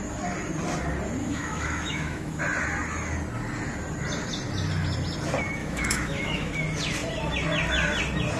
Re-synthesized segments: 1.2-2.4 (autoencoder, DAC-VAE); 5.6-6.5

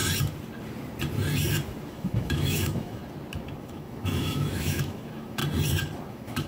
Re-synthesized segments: 1.9-3.0 (autoencoder, DAC-VAE); 3.6-5.4; 6.1-6.5